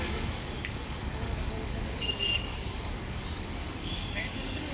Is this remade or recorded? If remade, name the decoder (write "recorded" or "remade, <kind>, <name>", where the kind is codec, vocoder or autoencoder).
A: remade, codec, DAC